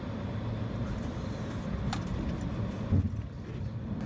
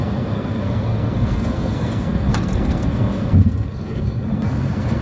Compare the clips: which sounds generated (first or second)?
second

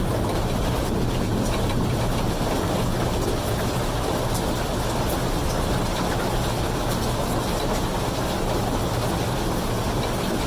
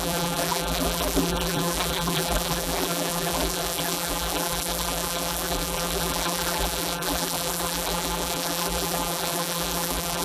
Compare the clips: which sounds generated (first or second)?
second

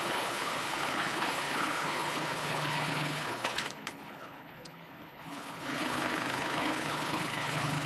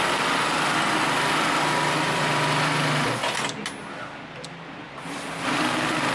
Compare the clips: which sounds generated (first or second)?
first